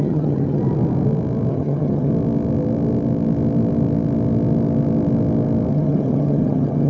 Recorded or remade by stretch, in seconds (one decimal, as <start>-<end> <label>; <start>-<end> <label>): 0.0-0.6 remade; 0.6-1.5 recorded; 1.5-2.1 remade; 2.1-5.7 recorded; 5.7-6.9 remade